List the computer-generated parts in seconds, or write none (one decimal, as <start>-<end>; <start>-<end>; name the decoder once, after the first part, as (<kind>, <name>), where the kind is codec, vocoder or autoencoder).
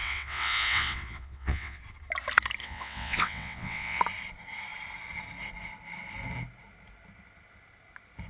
0.0-1.8 (vocoder, WaveNeXt); 2.6-4.0